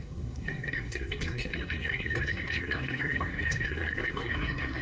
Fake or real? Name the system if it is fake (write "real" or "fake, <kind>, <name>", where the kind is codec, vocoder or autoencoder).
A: fake, codec, SNAC